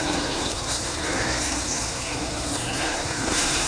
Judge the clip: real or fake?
fake